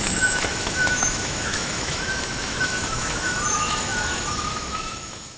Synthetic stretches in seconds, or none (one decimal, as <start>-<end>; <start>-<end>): 0.0-5.4